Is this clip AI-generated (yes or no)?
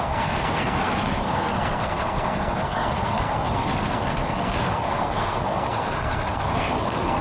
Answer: yes